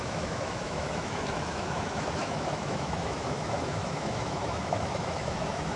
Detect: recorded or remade remade